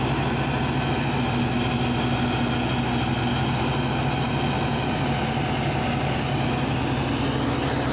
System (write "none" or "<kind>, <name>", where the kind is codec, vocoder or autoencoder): none